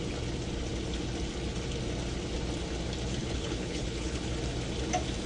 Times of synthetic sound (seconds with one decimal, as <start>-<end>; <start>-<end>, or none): 3.2-4.2